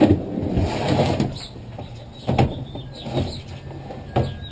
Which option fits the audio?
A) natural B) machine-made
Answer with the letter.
A